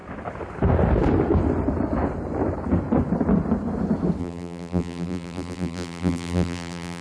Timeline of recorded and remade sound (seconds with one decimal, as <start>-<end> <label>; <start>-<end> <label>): 0.0-4.2 recorded; 4.2-7.0 remade